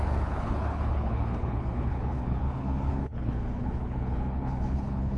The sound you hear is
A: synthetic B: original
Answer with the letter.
A